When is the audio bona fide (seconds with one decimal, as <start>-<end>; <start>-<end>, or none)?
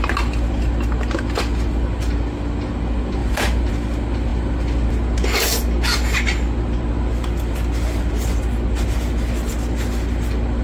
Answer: 0.0-3.2; 3.7-10.6